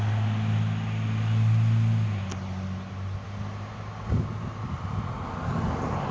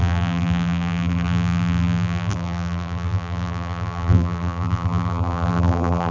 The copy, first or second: second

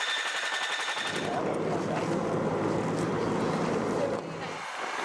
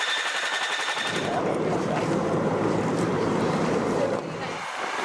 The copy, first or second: second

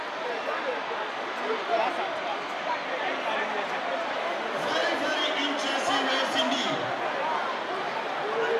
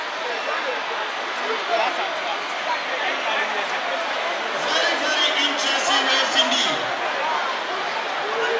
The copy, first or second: first